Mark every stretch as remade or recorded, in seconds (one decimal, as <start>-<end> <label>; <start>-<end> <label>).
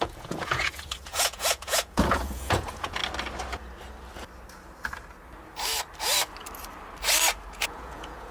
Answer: 0.0-3.0 remade; 3.0-7.5 recorded; 7.5-8.3 remade